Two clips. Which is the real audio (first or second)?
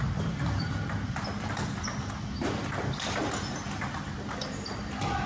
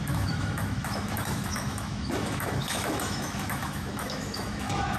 first